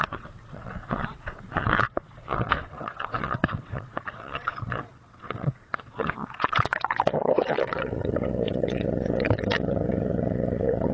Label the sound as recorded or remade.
remade